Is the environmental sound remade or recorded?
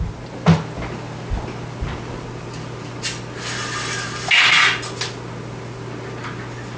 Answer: recorded